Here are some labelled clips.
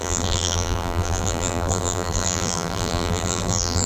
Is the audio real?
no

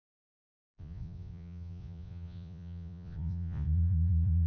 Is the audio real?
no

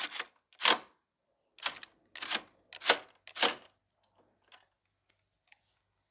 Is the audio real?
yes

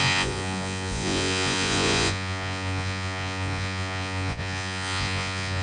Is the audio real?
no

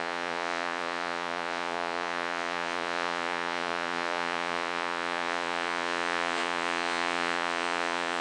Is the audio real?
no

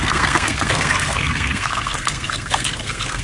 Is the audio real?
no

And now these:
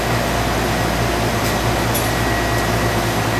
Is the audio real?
yes